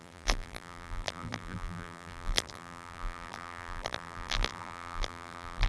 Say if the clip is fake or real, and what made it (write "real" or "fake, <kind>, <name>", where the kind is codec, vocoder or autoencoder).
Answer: fake, vocoder, BigVGAN v2